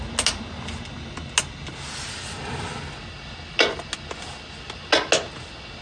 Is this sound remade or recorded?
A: recorded